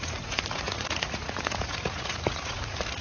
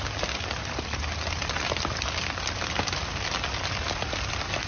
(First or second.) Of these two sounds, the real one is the second